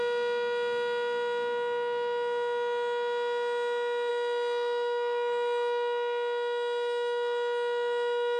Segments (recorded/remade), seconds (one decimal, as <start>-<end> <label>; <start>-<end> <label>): 0.0-4.1 recorded; 4.1-8.4 remade